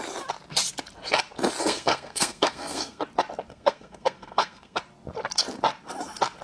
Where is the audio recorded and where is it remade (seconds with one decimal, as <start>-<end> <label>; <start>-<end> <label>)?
0.0-1.6 recorded; 1.6-3.0 remade; 3.0-3.5 recorded; 3.5-4.8 remade; 4.8-6.4 recorded